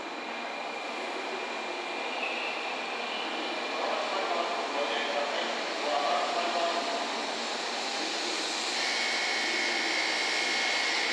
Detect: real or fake real